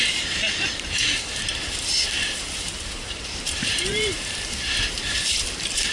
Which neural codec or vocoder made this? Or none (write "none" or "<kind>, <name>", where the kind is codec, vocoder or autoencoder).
vocoder, BigVGAN v2